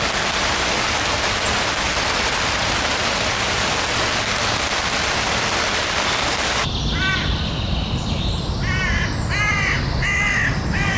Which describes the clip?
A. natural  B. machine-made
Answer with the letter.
A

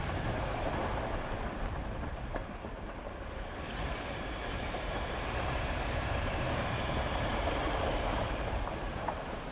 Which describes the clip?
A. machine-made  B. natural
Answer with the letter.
A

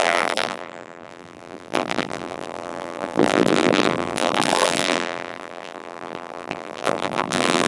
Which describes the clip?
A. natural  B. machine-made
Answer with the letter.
B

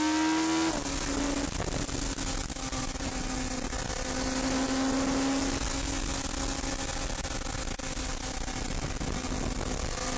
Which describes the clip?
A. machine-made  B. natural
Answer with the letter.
B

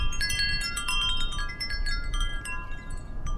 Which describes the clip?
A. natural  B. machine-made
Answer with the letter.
B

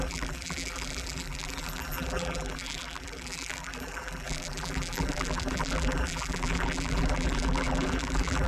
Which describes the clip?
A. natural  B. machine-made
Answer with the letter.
B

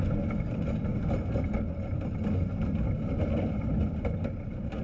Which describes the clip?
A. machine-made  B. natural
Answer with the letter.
B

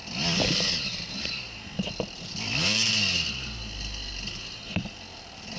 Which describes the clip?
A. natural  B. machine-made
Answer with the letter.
A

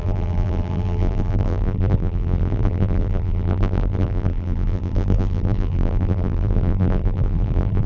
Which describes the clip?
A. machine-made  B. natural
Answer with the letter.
A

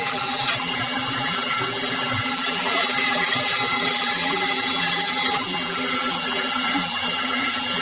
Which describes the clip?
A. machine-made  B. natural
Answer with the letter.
A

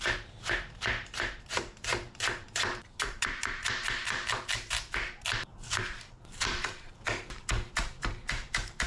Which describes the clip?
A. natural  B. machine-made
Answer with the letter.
B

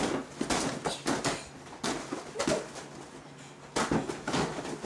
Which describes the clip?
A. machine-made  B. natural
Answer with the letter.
B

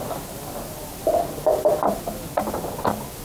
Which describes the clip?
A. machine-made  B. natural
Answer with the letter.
B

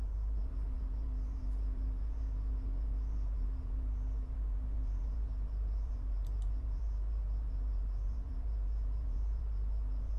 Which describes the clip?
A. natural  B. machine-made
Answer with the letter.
B